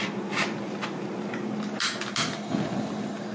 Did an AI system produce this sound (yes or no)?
no